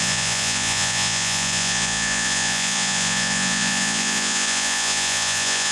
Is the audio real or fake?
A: fake